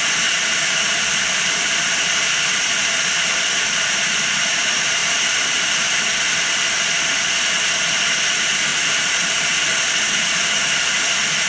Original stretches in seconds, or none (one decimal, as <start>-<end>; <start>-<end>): 0.0-11.5

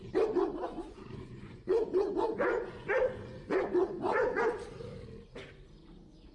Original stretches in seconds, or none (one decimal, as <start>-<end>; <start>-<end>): 0.0-0.6; 4.4-6.3